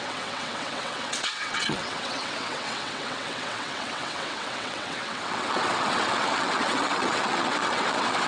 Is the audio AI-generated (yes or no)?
yes